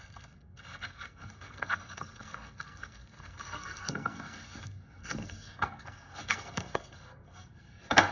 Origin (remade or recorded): remade